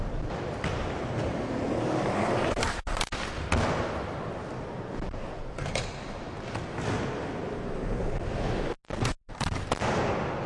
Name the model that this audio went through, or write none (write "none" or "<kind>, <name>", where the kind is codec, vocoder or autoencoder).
none